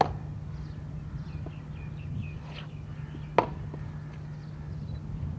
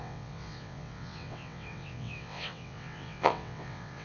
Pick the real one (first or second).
first